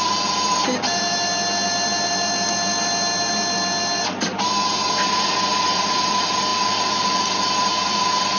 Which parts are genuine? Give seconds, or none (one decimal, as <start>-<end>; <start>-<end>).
0.0-8.4